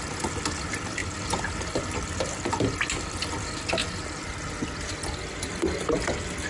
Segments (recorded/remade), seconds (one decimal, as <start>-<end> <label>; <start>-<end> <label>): 0.0-6.5 recorded